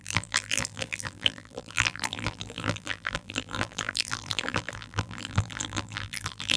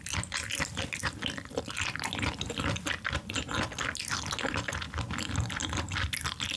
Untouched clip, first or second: second